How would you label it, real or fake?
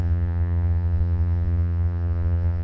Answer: fake